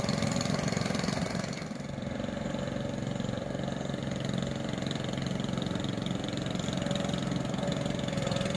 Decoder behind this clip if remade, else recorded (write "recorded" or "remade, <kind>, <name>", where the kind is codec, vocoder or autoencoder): recorded